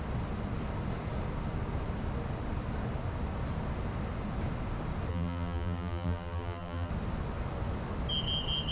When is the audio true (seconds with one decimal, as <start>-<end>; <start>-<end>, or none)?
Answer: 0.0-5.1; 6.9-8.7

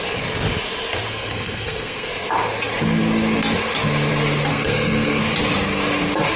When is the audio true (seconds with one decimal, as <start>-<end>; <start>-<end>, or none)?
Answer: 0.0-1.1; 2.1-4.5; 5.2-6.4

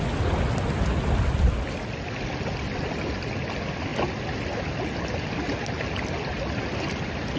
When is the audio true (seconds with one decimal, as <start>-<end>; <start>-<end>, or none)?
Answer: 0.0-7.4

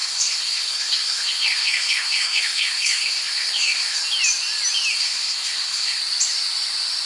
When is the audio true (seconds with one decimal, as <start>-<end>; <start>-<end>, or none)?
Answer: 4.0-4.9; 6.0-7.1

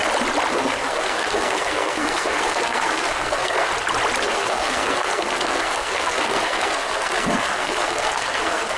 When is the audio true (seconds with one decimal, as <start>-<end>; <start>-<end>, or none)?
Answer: 0.0-0.5; 3.7-4.2

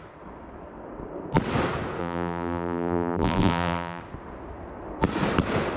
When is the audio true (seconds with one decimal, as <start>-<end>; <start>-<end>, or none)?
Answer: 0.0-2.0; 4.0-5.8

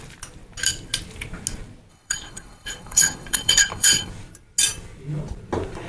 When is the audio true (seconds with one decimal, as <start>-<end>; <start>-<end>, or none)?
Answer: 0.0-1.9; 4.1-5.9